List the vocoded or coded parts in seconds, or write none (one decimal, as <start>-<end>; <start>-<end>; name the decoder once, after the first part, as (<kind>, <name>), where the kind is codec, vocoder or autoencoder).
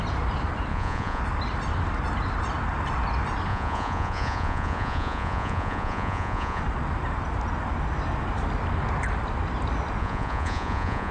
0.7-1.2 (vocoder, Vocos); 3.5-6.6; 10.0-11.1